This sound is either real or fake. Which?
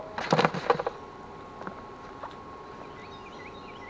real